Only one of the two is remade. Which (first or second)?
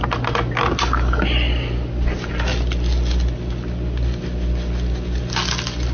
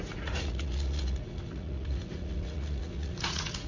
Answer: second